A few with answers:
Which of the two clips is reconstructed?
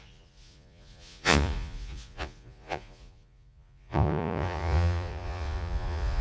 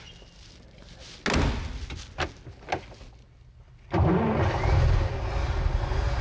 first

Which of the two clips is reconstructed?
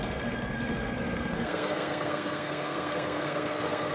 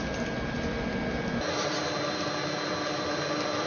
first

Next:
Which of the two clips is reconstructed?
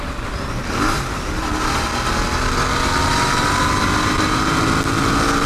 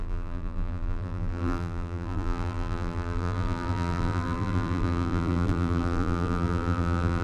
second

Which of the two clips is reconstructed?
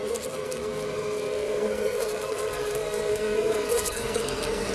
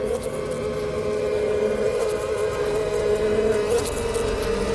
first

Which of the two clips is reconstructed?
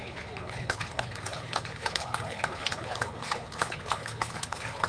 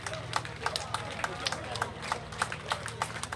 first